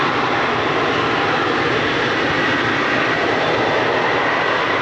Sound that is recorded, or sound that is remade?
recorded